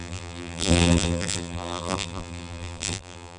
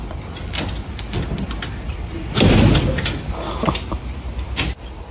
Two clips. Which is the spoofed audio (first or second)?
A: first